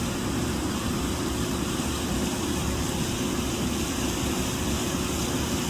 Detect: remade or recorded recorded